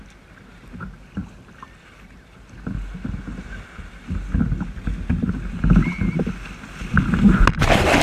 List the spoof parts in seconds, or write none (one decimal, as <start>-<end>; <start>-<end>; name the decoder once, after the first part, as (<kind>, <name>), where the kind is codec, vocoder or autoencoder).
none